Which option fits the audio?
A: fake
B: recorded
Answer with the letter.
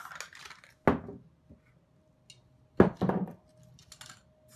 B